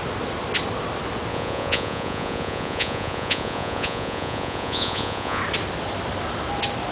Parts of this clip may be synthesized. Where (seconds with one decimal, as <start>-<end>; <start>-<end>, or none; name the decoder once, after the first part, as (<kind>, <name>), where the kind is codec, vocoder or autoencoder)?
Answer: 1.3-5.4 (vocoder, Vocos)